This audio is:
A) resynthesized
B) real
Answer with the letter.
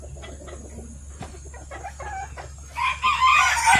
B